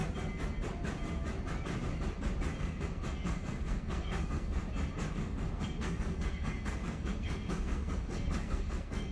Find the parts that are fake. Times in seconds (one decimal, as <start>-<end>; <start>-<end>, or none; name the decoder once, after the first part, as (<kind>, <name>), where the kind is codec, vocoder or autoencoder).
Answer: 2.6-4.6 (codec, SNAC); 5.1-9.1